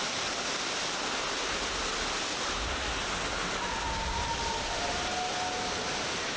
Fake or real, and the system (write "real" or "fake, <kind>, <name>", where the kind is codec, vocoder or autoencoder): real